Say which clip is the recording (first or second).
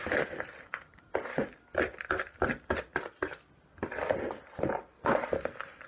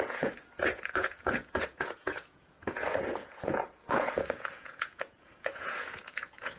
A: first